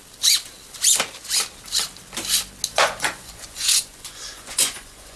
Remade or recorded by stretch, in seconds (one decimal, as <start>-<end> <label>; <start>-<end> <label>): 0.0-2.7 recorded; 2.7-5.2 remade